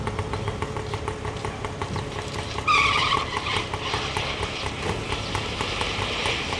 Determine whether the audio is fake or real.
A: real